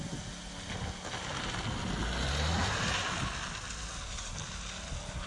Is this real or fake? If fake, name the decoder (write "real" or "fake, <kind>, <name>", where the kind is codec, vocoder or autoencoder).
real